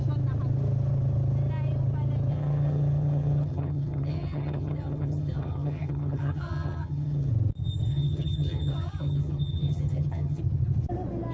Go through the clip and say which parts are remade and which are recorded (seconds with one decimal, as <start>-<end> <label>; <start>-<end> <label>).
0.0-2.3 recorded; 2.3-7.3 remade; 7.3-7.9 recorded; 7.9-10.4 remade; 10.4-11.3 recorded